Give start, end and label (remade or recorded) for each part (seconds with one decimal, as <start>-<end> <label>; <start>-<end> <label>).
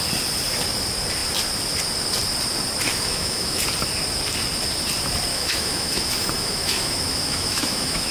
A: 0.0-2.9 recorded; 2.9-3.6 remade; 3.6-5.3 recorded; 5.3-8.1 remade